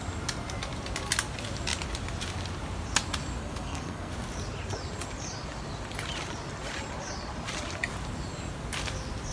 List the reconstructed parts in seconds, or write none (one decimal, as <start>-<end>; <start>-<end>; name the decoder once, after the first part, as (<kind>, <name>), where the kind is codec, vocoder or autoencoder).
3.4-4.1 (codec, SNAC)